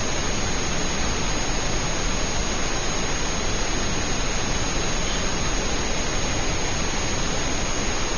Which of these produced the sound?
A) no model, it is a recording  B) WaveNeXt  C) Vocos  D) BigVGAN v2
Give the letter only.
A